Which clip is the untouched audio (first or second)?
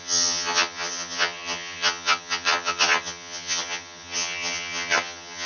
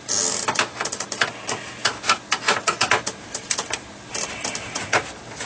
second